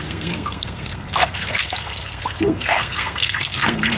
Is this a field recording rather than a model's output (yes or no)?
no